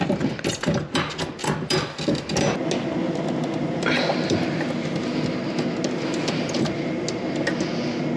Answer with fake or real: real